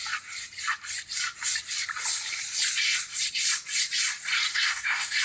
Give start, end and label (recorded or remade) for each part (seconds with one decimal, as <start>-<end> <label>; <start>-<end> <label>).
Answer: 0.0-4.5 recorded; 4.5-5.2 remade